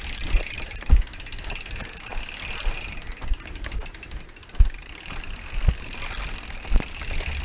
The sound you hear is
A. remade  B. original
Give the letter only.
B